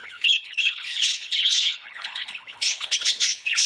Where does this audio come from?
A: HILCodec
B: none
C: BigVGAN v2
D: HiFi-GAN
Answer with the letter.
A